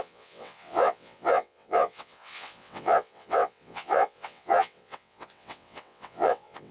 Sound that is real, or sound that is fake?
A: fake